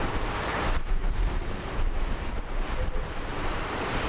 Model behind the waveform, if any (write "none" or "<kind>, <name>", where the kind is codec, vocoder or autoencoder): vocoder, BigVGAN v2